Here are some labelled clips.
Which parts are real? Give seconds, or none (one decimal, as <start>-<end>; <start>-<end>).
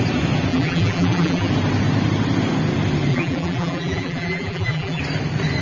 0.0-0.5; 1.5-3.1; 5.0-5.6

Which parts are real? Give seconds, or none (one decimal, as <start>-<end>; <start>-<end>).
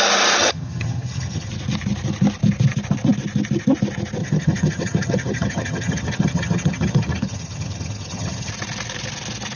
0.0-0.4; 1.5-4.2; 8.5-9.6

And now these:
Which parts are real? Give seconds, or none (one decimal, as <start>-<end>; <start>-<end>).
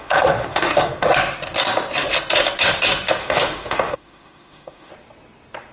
1.1-3.2; 4.9-5.7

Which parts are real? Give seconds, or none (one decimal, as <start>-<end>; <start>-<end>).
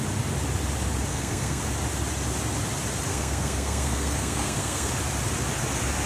0.0-1.1; 1.6-3.1; 4.9-6.1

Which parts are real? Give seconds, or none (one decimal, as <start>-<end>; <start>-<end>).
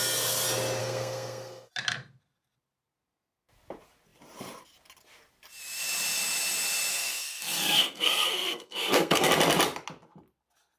0.0-0.8; 1.7-6.9; 9.3-10.8